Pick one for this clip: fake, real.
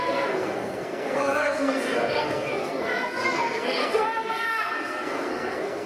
fake